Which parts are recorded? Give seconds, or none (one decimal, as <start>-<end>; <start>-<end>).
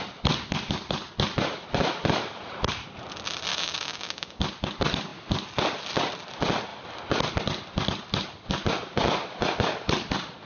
0.0-3.5; 4.4-10.5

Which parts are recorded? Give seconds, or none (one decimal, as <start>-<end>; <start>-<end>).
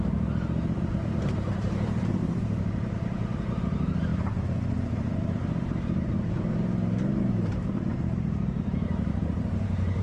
none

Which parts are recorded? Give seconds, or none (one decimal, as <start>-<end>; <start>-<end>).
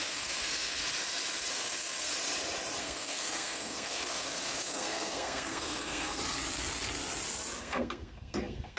0.8-1.5; 2.1-2.8; 6.2-7.6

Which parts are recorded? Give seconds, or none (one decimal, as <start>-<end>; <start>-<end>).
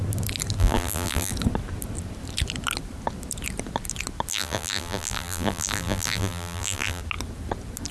0.0-0.6; 1.3-4.3; 7.0-7.9